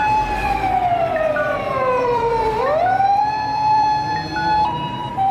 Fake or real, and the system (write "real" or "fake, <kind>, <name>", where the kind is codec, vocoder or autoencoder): fake, vocoder, BigVGAN v2